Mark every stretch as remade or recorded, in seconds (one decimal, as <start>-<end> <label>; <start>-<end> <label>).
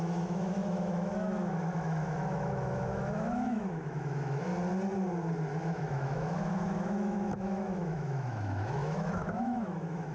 0.0-4.5 remade; 4.5-5.6 recorded; 5.6-10.1 remade